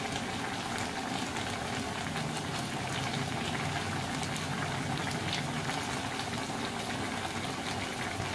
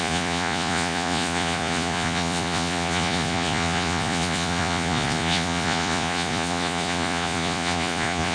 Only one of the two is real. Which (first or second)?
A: first